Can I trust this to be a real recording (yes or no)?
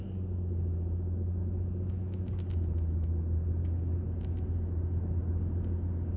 yes